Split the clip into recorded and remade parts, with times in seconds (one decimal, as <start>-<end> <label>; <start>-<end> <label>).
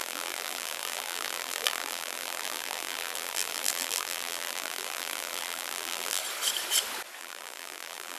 0.0-6.2 remade; 6.2-7.2 recorded; 7.2-8.2 remade